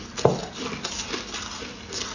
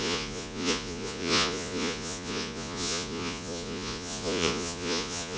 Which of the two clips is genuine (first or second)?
first